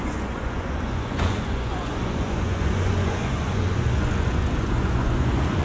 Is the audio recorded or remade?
remade